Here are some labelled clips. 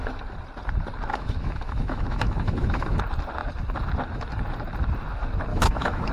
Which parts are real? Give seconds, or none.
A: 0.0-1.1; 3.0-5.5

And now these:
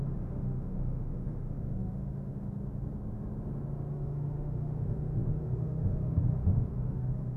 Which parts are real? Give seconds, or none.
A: 2.3-3.9

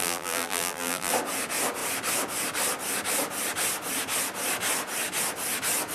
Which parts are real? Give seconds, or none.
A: 1.1-5.9

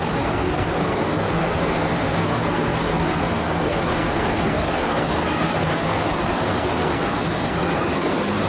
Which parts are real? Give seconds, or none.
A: none

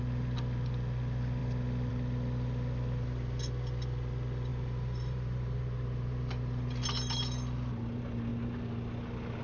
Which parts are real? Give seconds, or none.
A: 0.0-4.5; 6.8-9.4